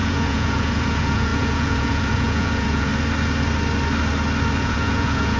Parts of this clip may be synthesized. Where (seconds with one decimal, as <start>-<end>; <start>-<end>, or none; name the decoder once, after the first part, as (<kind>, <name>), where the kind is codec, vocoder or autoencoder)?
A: 0.0-2.9 (vocoder, Vocos); 4.6-5.4

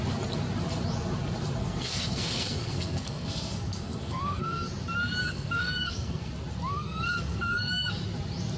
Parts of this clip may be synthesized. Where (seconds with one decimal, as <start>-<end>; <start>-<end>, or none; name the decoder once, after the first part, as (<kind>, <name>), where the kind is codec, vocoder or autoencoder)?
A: 1.6-4.7 (codec, SNAC); 5.2-6.3; 6.7-7.9